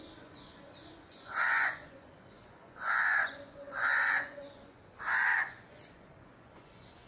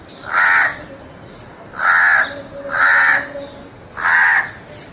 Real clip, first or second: second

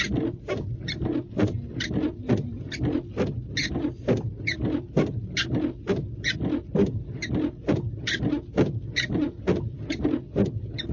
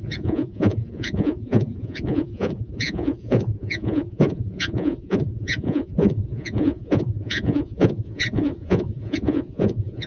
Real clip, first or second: first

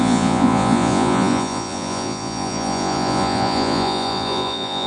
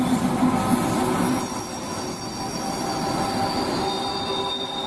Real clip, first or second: second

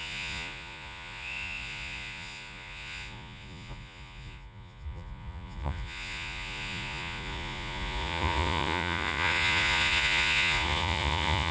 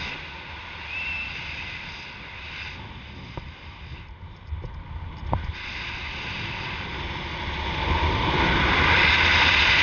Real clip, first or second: second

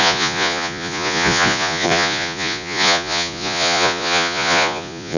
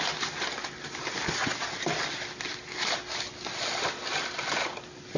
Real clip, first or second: second